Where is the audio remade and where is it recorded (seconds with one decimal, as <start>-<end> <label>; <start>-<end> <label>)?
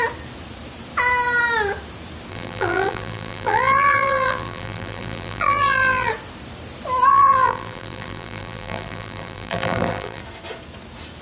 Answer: 0.0-2.3 recorded; 2.3-6.1 remade; 6.1-7.1 recorded; 7.1-10.2 remade; 10.2-11.2 recorded